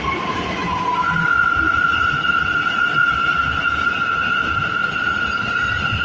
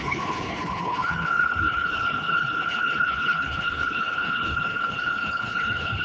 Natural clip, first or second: first